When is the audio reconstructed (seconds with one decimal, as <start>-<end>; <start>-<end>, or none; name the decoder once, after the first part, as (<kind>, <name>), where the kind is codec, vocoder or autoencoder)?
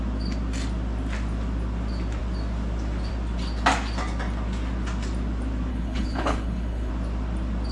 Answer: 5.7-6.9 (codec, HILCodec)